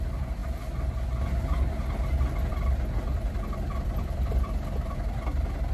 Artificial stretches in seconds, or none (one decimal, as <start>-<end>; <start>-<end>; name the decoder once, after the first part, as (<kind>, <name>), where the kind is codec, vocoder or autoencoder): 0.0-0.4 (vocoder, BigVGAN v2); 2.5-5.7